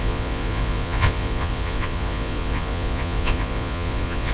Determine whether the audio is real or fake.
fake